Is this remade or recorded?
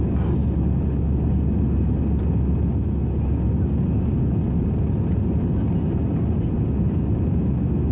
recorded